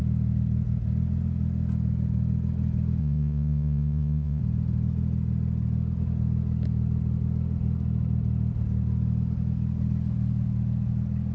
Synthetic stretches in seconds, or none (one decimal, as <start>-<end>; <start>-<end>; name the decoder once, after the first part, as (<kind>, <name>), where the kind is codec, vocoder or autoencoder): 3.0-4.4 (vocoder, Vocos)